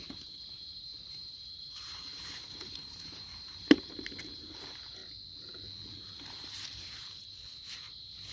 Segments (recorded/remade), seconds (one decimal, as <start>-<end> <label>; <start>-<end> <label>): 0.0-5.0 remade; 5.0-6.3 recorded; 6.3-8.3 remade